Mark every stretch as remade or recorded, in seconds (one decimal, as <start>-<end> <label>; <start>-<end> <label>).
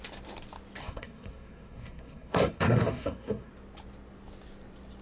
0.0-0.8 recorded; 0.8-3.5 remade; 3.5-5.0 recorded